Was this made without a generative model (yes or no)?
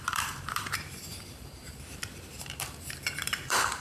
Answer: no